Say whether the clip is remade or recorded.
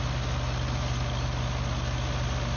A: recorded